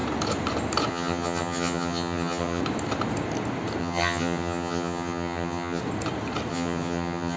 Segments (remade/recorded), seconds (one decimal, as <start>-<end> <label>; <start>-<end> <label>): 0.0-0.9 recorded; 0.9-2.6 remade; 2.6-3.8 recorded; 3.8-5.8 remade; 5.8-6.5 recorded; 6.5-7.4 remade